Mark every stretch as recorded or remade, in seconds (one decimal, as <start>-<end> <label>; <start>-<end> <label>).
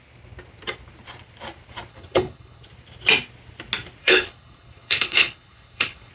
0.0-1.9 recorded; 1.9-2.7 remade; 2.7-4.0 recorded; 4.0-6.1 remade